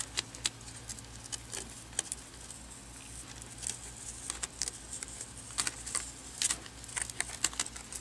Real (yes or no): yes